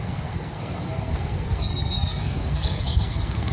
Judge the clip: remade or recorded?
remade